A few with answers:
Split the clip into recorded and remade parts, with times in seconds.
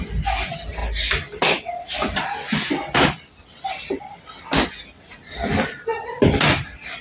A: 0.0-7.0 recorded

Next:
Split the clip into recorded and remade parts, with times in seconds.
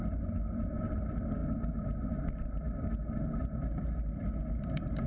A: 0.0-5.1 recorded